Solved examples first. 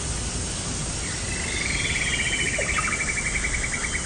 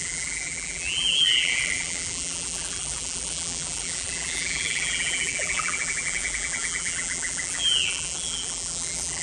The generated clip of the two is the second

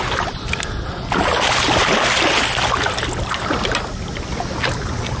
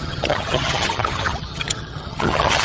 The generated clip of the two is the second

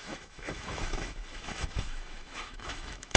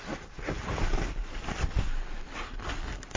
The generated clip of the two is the first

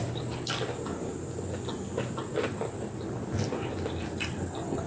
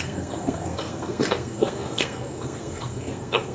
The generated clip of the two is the second